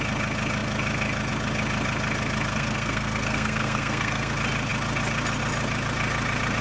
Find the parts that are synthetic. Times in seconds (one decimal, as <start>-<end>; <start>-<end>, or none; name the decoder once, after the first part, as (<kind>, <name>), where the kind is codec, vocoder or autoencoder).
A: 2.5-4.3 (codec, SNAC)